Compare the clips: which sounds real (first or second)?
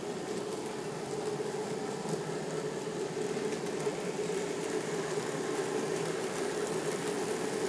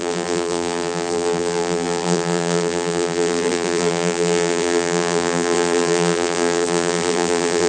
first